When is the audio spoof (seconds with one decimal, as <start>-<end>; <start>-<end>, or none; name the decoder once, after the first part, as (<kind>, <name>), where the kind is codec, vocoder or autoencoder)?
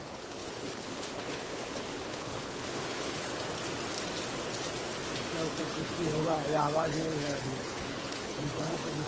0.0-3.3 (codec, HILCodec); 5.6-9.1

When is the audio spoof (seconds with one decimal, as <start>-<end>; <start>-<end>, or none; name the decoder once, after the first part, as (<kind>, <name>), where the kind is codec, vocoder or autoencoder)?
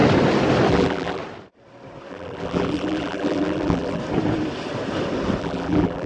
0.7-1.2 (vocoder, BigVGAN v2); 2.1-4.0; 5.4-6.1